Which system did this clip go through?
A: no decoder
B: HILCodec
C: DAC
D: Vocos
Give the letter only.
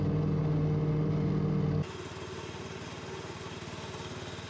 A